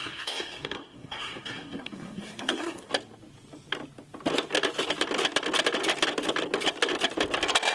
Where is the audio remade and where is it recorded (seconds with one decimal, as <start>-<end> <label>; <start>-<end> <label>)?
0.0-2.9 remade; 2.9-7.7 recorded